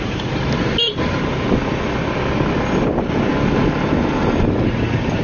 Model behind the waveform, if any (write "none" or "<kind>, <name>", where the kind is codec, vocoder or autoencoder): none